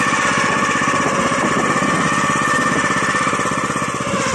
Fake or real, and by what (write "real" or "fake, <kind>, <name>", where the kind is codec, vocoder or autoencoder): real